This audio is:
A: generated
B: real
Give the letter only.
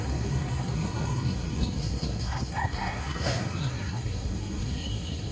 A